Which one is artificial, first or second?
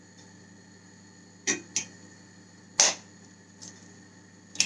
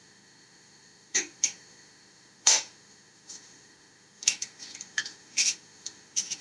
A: second